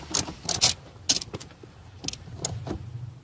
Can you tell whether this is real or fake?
real